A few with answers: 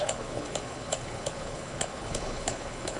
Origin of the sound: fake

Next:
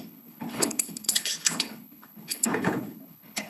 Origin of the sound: fake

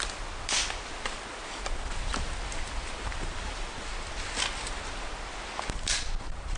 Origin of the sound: real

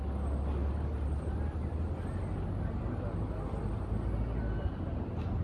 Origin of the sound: real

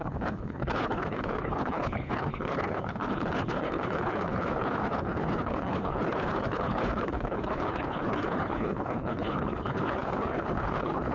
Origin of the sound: fake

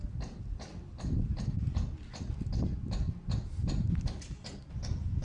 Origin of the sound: real